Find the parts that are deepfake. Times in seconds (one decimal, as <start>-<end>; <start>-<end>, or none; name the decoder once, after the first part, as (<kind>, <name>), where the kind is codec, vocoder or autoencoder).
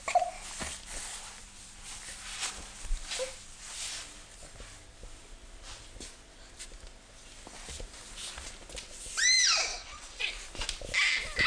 9.7-10.3 (vocoder, WaveNeXt)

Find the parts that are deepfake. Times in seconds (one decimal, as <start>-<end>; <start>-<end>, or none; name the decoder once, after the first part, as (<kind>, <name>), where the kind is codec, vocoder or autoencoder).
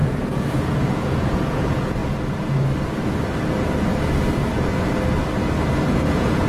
0.0-2.0 (vocoder, Vocos); 5.9-6.5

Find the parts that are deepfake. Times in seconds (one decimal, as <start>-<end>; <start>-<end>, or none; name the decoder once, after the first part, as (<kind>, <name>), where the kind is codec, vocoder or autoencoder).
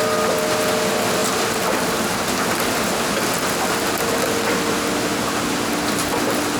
none